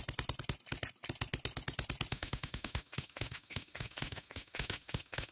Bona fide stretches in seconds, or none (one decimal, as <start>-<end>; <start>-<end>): 0.0-2.1